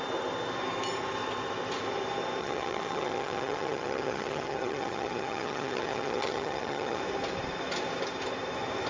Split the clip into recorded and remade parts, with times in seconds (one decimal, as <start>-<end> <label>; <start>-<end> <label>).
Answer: 0.0-2.4 recorded; 2.4-7.0 remade; 7.0-8.9 recorded